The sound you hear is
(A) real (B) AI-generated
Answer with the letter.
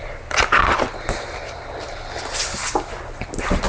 A